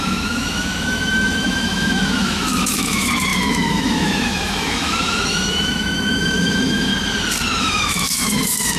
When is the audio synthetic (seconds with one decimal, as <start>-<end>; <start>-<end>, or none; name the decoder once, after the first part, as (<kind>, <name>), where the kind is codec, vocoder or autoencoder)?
0.0-6.9 (autoencoder, DAC-VAE); 7.6-8.8